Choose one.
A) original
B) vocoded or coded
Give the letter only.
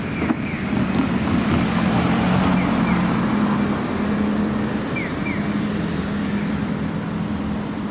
A